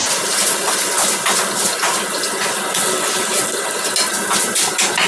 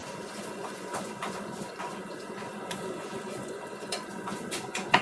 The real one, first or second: first